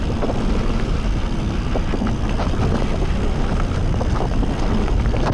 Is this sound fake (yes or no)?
no